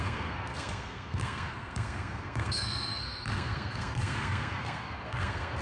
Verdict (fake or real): fake